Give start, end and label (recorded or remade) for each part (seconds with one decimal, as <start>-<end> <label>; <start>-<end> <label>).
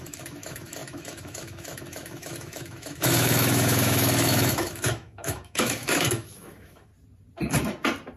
0.0-6.9 remade; 6.9-8.2 recorded